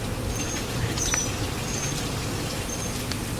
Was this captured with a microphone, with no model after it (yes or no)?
yes